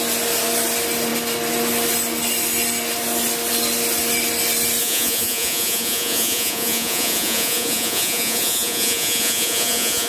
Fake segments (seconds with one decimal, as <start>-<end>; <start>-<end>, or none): 4.8-10.1